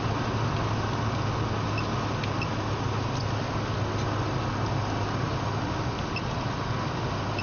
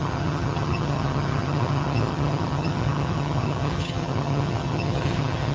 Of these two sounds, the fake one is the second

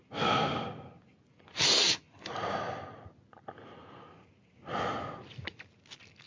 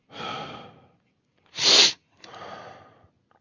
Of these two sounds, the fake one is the second